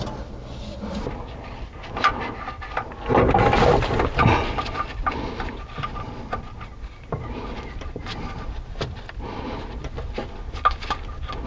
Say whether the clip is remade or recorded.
recorded